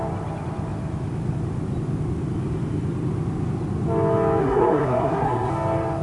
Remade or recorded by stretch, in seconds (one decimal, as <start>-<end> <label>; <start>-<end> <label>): 0.0-4.4 recorded; 4.4-5.5 remade; 5.5-6.0 recorded